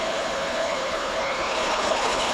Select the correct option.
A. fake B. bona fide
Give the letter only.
A